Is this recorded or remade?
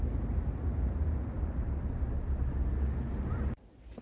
recorded